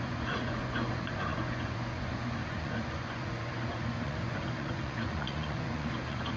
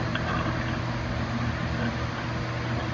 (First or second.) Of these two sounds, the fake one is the first